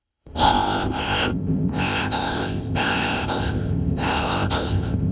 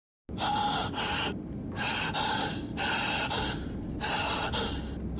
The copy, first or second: first